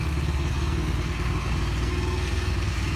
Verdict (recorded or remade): remade